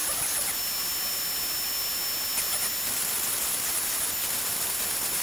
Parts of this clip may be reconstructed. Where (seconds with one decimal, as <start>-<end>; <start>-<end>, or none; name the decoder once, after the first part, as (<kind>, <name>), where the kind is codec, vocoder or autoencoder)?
none